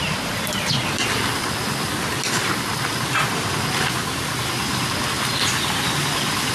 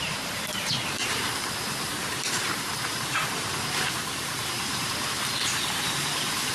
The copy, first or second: second